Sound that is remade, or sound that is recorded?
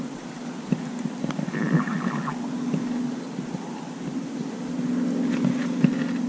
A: recorded